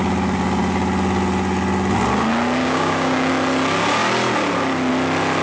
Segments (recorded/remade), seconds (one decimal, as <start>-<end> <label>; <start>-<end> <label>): 0.0-2.6 recorded; 2.6-3.3 remade; 3.3-5.4 recorded

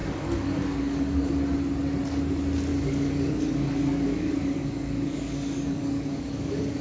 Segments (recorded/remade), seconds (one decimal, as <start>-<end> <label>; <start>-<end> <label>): 0.0-1.3 remade; 1.3-2.7 recorded; 2.7-6.8 remade

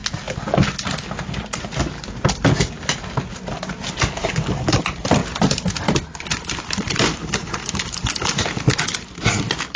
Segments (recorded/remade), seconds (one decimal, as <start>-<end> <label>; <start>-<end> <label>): 0.0-4.2 recorded; 4.2-4.8 remade; 4.8-7.1 recorded; 7.1-8.4 remade; 8.4-9.8 recorded

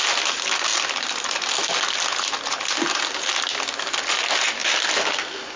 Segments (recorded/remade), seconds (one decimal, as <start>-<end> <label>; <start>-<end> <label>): 0.0-5.6 recorded

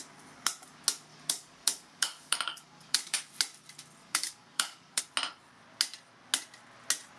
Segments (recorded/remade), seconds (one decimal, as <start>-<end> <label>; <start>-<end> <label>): 0.0-1.1 recorded; 1.1-3.3 remade; 3.3-4.0 recorded; 4.0-5.0 remade; 5.0-7.2 recorded

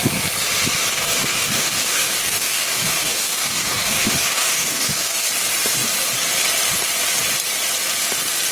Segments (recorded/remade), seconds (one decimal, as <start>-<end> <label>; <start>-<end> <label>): 0.0-0.9 recorded; 0.9-5.3 remade; 5.3-8.5 recorded

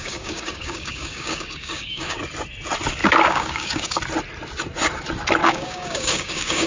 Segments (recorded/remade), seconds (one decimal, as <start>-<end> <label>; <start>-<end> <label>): 0.0-2.2 remade; 2.2-3.0 recorded; 3.0-4.0 remade; 4.0-5.4 recorded; 5.4-6.7 remade

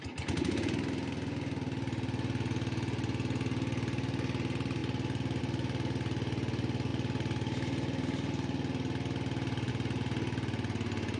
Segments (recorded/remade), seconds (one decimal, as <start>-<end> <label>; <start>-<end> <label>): 0.0-11.2 recorded